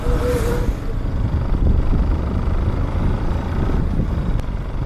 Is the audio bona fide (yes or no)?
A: yes